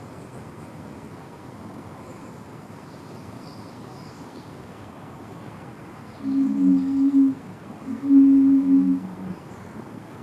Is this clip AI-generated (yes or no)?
yes